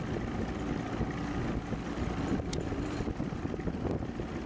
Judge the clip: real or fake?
real